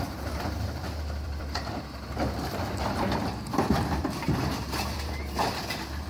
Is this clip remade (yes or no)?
yes